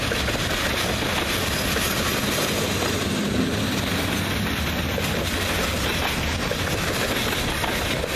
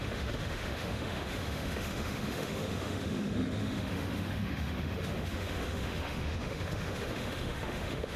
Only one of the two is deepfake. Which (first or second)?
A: second